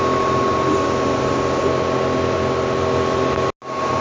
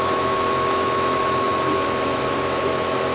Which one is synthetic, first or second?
second